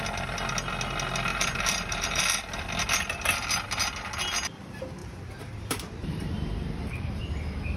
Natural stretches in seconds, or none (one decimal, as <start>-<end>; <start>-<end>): 0.0-1.3; 2.2-5.0; 7.2-7.8